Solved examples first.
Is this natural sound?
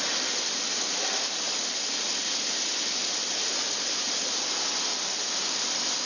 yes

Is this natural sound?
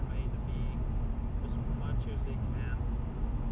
yes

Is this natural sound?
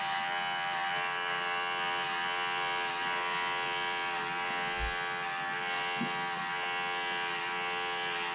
yes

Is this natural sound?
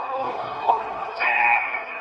no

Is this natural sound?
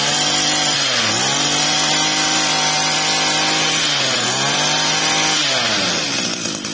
yes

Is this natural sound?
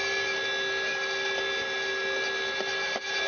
yes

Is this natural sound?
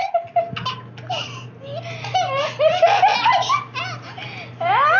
yes